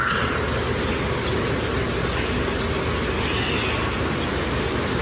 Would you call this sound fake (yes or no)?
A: no